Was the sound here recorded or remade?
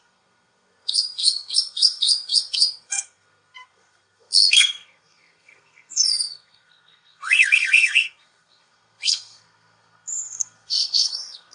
remade